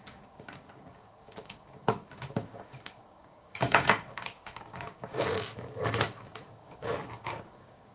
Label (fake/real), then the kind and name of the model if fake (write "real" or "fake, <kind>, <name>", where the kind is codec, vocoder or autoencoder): fake, codec, DAC